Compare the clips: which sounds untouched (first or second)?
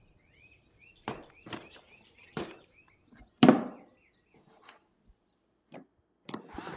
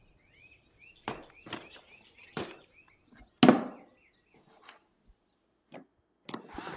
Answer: second